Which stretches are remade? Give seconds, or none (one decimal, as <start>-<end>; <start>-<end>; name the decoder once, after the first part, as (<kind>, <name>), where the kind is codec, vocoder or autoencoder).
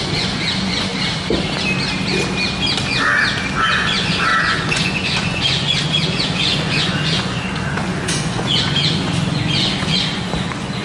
0.0-0.9 (vocoder, Vocos); 3.6-10.8